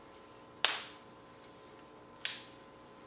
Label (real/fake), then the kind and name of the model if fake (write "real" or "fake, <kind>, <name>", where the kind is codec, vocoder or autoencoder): real